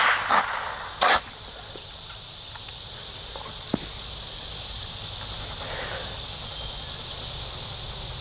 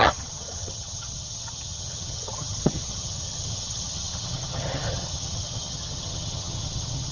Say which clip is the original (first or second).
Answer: first